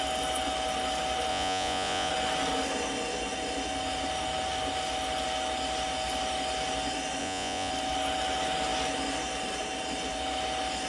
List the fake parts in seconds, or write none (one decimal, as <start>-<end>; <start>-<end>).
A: 1.3-2.1; 7.2-7.7